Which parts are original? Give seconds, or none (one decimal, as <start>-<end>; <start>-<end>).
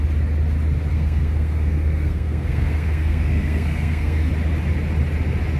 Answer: 0.0-0.9; 4.3-5.6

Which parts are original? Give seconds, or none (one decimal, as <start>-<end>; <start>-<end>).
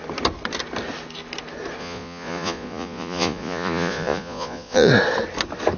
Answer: 0.0-1.8; 4.9-5.8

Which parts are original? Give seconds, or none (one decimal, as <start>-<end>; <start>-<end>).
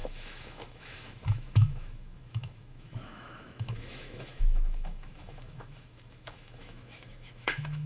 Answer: none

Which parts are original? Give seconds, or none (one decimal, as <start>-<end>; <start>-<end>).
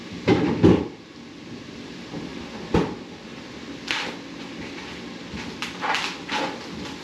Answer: 0.0-7.0